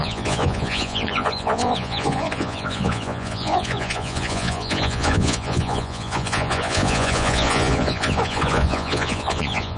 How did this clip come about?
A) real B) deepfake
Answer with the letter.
B